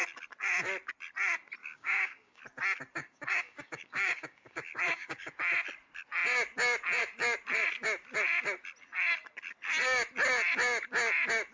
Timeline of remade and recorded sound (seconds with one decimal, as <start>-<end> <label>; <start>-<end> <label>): 0.0-1.6 recorded; 1.6-2.4 remade; 2.4-3.0 recorded; 3.0-5.3 remade; 5.3-11.5 recorded